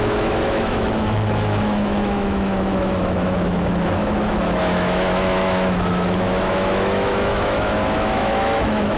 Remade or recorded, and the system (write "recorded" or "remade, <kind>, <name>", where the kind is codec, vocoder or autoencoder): remade, autoencoder, DAC-VAE